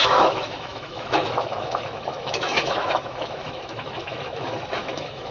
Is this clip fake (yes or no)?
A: yes